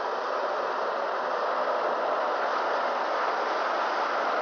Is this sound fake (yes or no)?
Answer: yes